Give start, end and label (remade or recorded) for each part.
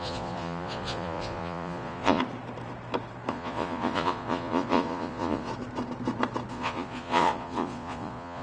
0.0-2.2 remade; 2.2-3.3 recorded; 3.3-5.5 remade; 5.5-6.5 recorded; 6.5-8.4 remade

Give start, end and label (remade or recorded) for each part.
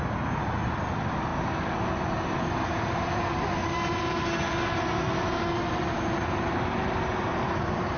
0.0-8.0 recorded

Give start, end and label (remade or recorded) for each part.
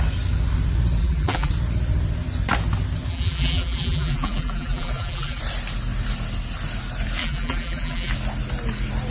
0.0-1.0 recorded; 1.0-1.5 remade; 1.5-3.1 recorded; 3.1-5.4 remade; 5.4-7.2 recorded; 7.2-8.1 remade; 8.1-9.1 recorded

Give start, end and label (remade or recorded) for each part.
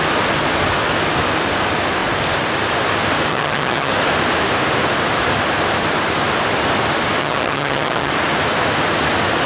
0.0-3.3 recorded; 3.3-3.9 remade; 3.9-7.2 recorded; 7.2-8.1 remade; 8.1-9.5 recorded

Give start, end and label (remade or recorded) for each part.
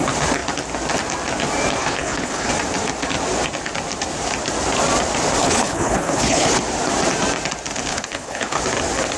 0.0-1.8 recorded; 1.8-2.5 remade; 2.5-5.4 recorded; 5.4-6.6 remade; 6.6-7.9 recorded; 7.9-8.6 remade; 8.6-9.2 recorded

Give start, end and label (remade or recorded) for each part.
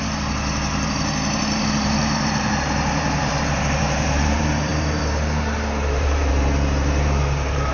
0.0-7.7 remade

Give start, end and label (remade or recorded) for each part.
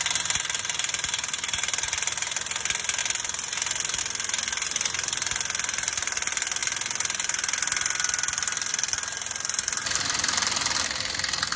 0.0-11.6 recorded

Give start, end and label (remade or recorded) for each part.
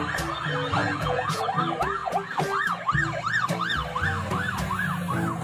0.0-0.8 recorded; 0.8-1.4 remade; 1.4-5.4 recorded